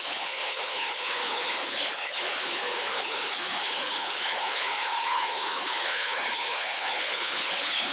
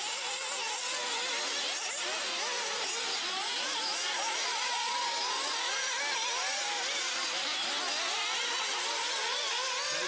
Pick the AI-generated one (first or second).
first